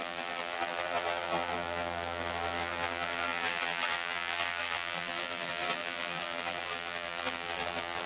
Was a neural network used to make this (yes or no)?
yes